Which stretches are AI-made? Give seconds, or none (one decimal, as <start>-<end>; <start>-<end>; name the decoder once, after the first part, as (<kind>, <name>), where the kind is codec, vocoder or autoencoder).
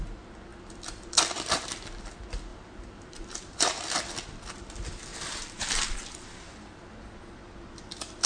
2.5-3.8 (vocoder, BigVGAN v2); 5.1-6.9